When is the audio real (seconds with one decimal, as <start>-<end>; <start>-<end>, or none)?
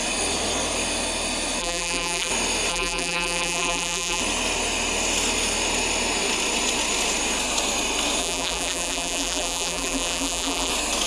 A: 0.0-1.6; 2.3-2.7; 4.2-8.2; 10.7-11.1